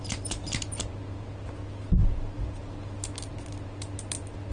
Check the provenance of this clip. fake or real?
real